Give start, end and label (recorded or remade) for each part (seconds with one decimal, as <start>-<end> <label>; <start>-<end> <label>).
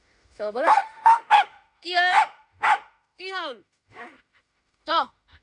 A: 0.0-5.4 remade